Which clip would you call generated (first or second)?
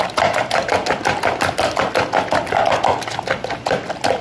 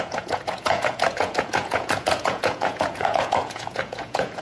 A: second